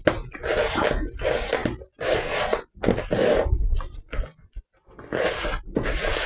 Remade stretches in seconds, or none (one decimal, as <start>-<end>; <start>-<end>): none